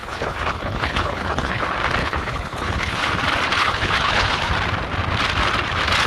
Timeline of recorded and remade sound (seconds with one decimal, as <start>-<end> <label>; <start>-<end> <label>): 0.0-1.6 remade; 1.6-2.0 recorded; 2.0-3.1 remade; 3.1-3.6 recorded; 3.6-4.5 remade; 4.5-6.1 recorded